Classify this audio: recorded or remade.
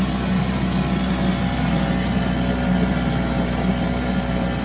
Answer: recorded